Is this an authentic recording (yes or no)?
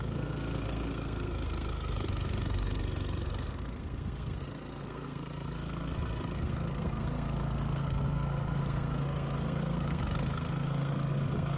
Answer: no